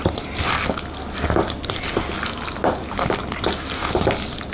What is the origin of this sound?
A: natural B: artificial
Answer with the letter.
A